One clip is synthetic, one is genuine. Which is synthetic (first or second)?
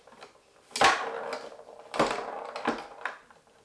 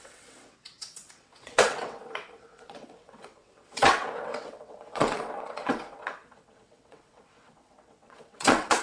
second